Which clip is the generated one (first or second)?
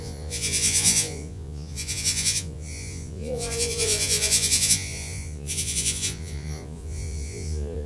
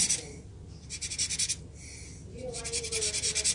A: first